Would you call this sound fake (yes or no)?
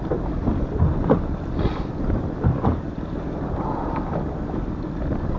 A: no